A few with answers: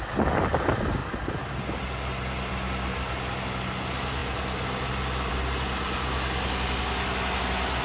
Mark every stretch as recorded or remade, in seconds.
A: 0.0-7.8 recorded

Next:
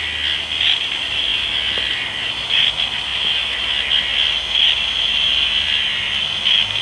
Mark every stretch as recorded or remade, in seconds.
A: 0.0-6.8 recorded

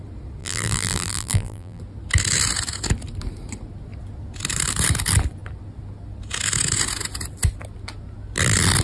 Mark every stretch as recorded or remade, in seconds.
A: 0.0-0.4 recorded; 0.4-1.8 remade; 1.8-8.8 recorded

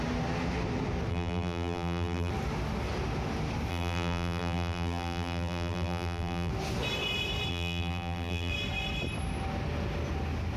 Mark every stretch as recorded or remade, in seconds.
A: 0.0-1.1 recorded; 1.1-2.3 remade; 2.3-3.7 recorded; 3.7-6.5 remade; 6.5-7.5 recorded; 7.5-8.5 remade; 8.5-10.6 recorded

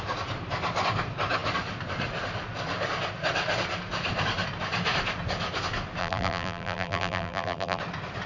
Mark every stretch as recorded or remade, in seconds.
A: 0.0-6.0 recorded; 6.0-7.8 remade; 7.8-8.3 recorded

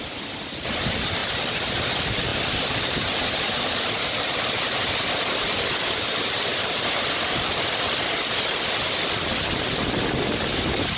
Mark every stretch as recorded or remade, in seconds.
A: 0.0-11.0 recorded

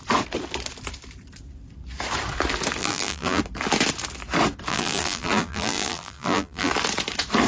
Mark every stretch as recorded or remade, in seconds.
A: 0.0-2.8 recorded; 2.8-3.4 remade; 3.4-4.7 recorded; 4.7-6.7 remade; 6.7-7.5 recorded